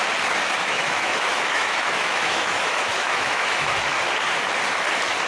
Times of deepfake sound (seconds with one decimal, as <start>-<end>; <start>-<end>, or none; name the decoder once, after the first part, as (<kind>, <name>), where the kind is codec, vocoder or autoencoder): 0.6-3.8 (autoencoder, DAC-VAE)